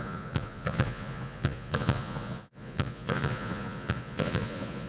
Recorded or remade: remade